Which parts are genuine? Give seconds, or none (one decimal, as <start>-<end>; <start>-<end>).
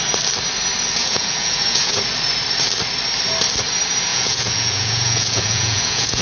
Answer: 0.0-1.0; 2.0-4.1